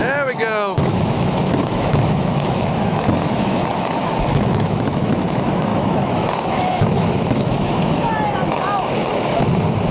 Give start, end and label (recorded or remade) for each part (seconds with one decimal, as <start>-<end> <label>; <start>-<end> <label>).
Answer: 0.0-5.1 remade; 5.1-5.7 recorded; 5.7-9.4 remade; 9.4-9.9 recorded